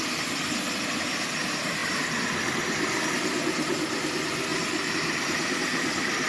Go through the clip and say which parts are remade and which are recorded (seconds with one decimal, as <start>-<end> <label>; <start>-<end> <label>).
0.0-6.3 recorded